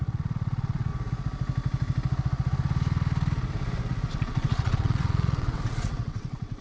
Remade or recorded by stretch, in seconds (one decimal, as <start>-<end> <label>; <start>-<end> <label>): 0.0-0.9 remade; 0.9-4.1 recorded; 4.1-6.6 remade